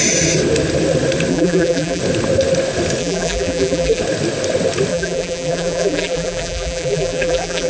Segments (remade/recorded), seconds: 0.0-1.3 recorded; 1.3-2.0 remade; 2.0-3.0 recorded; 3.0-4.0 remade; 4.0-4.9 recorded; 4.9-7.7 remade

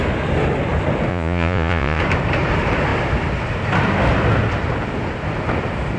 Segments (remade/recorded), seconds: 0.0-1.1 recorded; 1.1-2.0 remade; 2.0-6.0 recorded

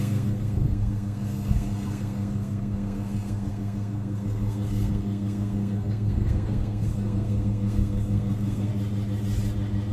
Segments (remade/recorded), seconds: 0.0-8.7 remade; 8.7-9.9 recorded

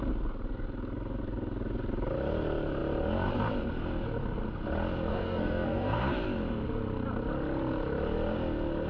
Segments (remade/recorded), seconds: 0.0-5.1 recorded; 5.1-6.0 remade; 6.0-8.9 recorded

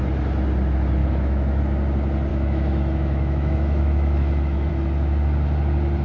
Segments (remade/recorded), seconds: 0.0-1.0 recorded; 1.0-1.6 remade; 1.6-2.3 recorded; 2.3-4.7 remade; 4.7-6.0 recorded